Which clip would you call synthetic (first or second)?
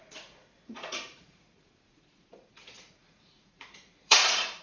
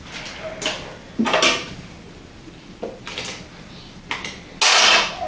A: first